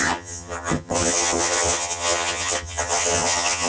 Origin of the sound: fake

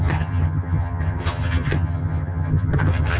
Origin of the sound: fake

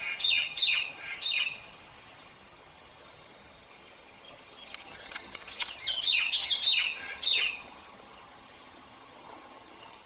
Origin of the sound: fake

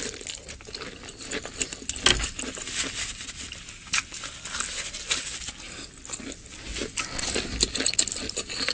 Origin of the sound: real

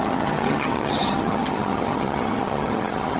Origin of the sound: fake